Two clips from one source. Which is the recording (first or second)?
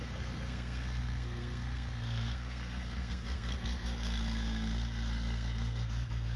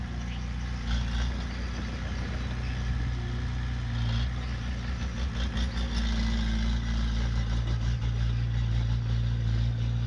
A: second